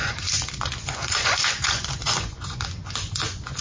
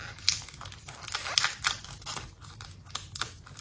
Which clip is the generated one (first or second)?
first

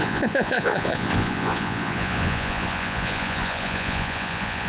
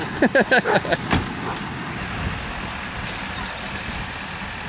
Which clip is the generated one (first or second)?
first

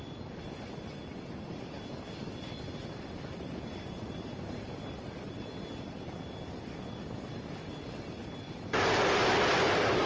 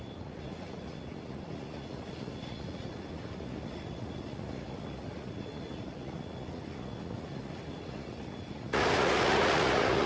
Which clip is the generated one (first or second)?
second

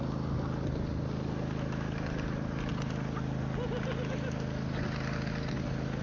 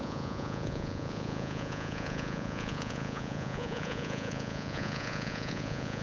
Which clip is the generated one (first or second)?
second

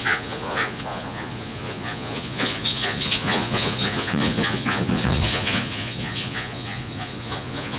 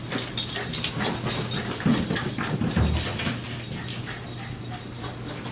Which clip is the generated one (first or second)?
first